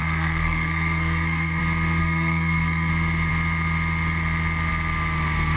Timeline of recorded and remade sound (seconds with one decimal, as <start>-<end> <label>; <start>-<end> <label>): 0.0-1.6 remade; 1.6-2.0 recorded; 2.0-2.9 remade; 2.9-5.6 recorded